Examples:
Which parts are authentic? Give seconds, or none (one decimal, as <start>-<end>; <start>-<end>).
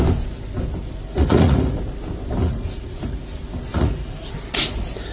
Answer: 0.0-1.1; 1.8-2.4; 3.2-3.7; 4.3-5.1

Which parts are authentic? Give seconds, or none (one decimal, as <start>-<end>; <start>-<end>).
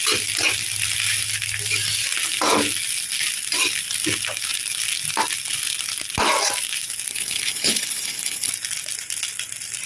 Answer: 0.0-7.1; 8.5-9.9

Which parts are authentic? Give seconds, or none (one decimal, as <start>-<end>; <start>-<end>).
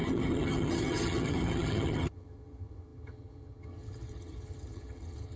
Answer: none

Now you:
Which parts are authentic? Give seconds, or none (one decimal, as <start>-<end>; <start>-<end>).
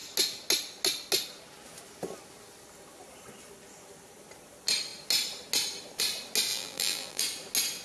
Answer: 0.0-6.5; 7.2-7.8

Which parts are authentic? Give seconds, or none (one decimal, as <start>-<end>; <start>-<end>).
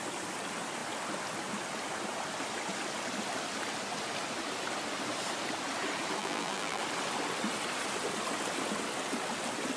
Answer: 0.0-6.2; 6.8-9.8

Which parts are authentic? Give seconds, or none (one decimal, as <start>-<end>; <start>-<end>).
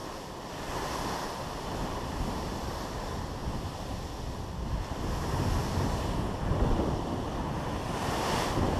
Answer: 0.0-2.5; 3.4-7.8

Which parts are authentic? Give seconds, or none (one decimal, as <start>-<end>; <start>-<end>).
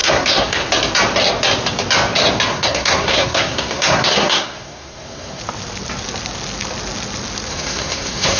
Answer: 0.7-2.5; 5.4-7.5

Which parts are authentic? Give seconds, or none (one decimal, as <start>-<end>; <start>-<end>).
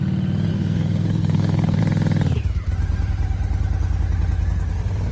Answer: 0.0-0.5; 1.8-5.1